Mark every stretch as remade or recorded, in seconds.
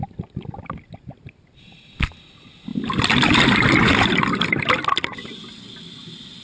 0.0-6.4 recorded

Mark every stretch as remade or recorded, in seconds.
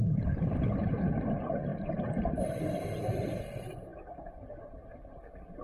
0.0-1.7 recorded; 1.7-3.4 remade; 3.4-5.6 recorded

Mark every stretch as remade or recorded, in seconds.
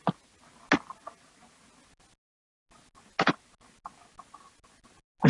0.0-5.3 recorded